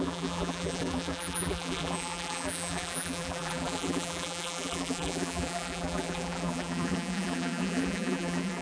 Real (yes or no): no